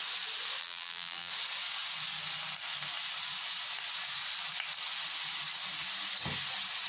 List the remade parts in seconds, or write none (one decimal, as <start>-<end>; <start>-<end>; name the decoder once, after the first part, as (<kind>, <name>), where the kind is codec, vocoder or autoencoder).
0.6-1.3 (vocoder, BigVGAN v2)